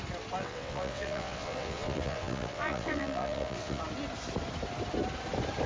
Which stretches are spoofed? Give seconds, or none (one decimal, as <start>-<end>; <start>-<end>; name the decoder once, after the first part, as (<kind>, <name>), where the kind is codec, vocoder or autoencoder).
0.4-3.8 (vocoder, WaveNeXt)